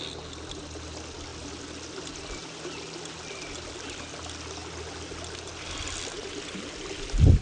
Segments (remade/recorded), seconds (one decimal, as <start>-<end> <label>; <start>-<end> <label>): 0.0-7.4 recorded